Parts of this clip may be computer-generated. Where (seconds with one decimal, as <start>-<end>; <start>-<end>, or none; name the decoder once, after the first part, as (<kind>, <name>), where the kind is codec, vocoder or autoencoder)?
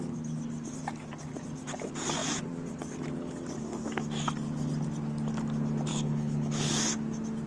5.9-6.7 (codec, HILCodec)